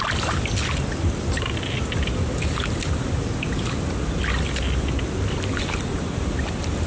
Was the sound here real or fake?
real